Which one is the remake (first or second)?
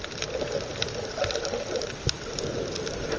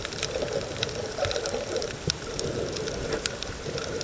second